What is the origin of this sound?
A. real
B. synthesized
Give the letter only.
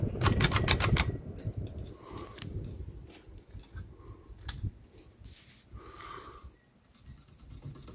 A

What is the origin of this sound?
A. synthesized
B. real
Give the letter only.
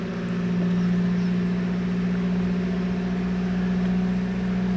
B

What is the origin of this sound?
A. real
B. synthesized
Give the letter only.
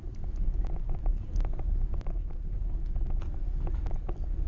A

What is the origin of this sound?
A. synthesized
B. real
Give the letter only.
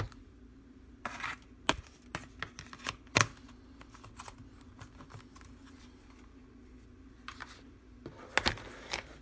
B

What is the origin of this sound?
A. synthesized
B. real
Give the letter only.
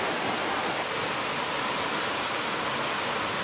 B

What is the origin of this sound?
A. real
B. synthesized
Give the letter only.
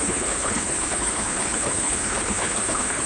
B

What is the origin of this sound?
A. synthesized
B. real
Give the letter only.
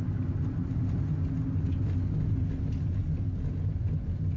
B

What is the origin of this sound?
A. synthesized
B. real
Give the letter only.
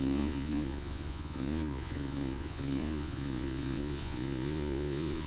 A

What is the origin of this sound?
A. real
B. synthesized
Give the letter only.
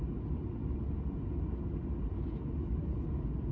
A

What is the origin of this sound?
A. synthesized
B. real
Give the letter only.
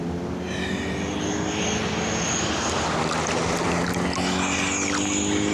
B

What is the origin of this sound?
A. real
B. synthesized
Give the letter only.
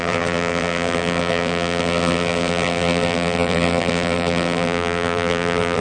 B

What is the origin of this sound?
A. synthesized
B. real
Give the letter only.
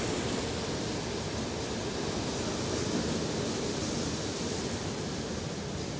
B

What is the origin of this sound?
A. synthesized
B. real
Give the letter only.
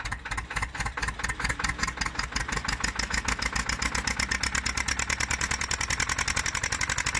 B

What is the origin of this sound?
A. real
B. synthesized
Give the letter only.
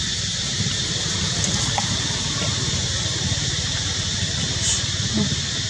B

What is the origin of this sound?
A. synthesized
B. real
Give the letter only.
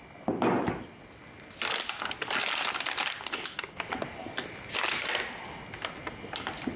B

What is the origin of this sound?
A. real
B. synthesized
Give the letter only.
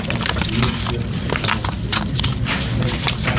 A